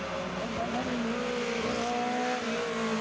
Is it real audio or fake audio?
real